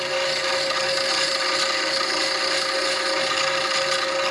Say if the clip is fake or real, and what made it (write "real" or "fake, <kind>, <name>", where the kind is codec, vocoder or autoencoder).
real